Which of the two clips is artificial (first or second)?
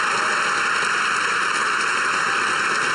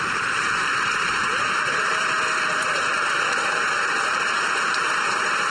second